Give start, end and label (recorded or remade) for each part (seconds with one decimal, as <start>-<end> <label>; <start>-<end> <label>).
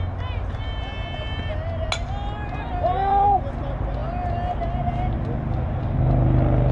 0.0-6.7 recorded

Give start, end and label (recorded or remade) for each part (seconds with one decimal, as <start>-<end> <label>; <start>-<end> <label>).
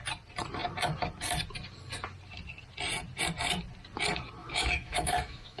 0.0-4.4 recorded; 4.4-5.6 remade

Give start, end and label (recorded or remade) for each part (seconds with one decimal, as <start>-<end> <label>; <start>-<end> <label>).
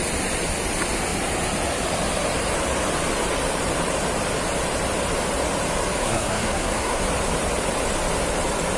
0.0-6.0 recorded; 6.0-7.0 remade; 7.0-8.8 recorded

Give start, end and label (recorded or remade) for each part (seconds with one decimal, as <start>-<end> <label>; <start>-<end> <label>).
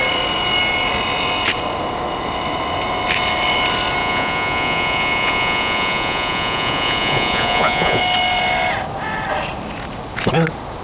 0.0-4.0 recorded; 4.0-8.0 remade; 8.0-10.8 recorded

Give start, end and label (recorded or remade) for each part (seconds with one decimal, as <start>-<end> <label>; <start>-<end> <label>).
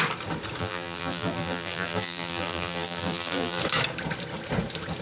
0.0-0.6 recorded; 0.6-3.6 remade; 3.6-5.0 recorded